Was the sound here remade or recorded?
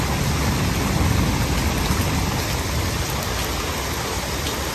recorded